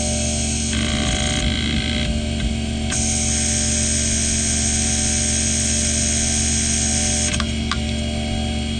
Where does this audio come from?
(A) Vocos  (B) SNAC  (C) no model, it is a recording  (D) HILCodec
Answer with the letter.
C